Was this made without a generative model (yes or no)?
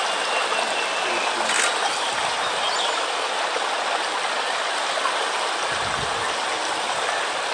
yes